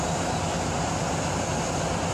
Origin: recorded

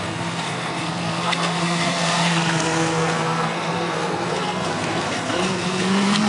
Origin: remade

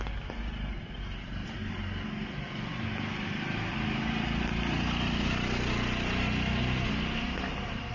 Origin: recorded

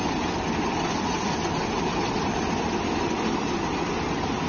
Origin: recorded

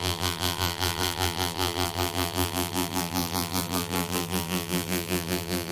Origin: remade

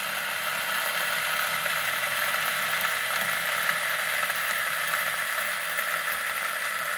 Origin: recorded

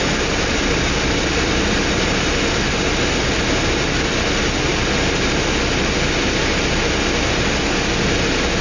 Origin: recorded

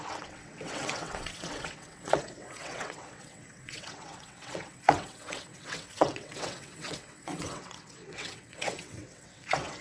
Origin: remade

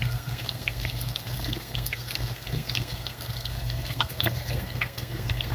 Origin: remade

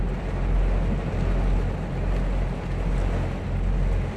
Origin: recorded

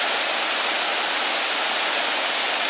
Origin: recorded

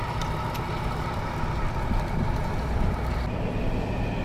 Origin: recorded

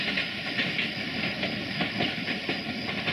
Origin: recorded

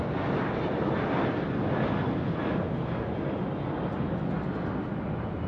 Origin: recorded